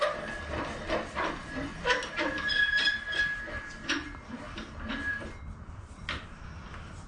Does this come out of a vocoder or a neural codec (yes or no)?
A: no